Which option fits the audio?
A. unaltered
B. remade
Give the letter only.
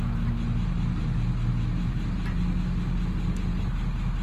A